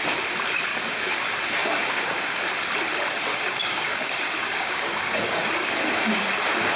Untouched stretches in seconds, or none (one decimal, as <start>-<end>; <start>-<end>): 0.0-0.7; 1.2-1.6; 2.4-3.3; 5.5-6.8